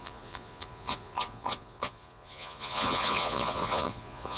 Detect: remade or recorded remade